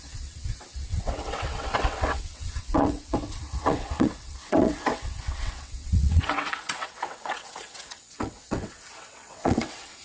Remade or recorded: remade